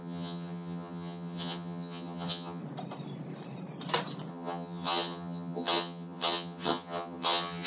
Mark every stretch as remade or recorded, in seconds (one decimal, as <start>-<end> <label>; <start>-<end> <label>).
0.0-2.6 remade; 2.6-4.3 recorded; 4.3-7.7 remade